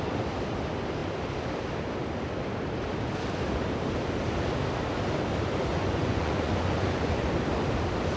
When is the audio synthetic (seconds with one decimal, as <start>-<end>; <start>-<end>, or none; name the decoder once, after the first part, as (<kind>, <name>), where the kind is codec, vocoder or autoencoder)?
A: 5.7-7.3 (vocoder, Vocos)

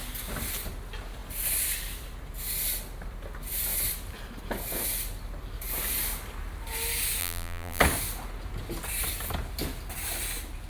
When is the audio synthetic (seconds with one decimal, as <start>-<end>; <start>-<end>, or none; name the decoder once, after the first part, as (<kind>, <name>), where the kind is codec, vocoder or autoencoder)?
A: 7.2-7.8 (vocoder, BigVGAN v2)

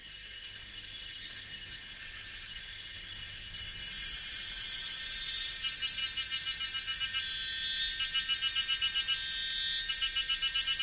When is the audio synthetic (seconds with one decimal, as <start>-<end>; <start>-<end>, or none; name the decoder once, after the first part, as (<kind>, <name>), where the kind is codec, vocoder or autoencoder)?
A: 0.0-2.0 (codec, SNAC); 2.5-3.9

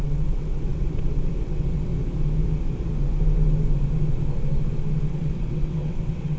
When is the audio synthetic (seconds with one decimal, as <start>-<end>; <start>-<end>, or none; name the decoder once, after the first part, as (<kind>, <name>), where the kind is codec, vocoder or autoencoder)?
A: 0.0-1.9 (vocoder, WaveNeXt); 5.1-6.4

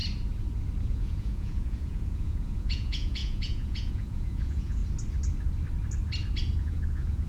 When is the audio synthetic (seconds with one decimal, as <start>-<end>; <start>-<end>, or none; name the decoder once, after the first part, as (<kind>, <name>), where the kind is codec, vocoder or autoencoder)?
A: 0.8-4.8 (vocoder, Vocos); 6.6-7.3

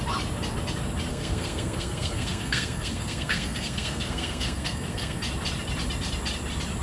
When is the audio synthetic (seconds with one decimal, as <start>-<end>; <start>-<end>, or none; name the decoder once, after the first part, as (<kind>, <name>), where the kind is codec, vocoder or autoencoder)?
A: 1.1-5.2 (codec, SNAC)